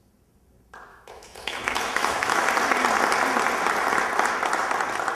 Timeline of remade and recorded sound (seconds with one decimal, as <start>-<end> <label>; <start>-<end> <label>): 0.0-0.9 recorded; 0.9-2.5 remade; 2.5-5.1 recorded